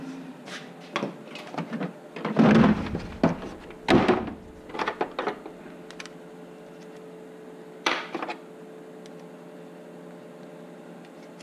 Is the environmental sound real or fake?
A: real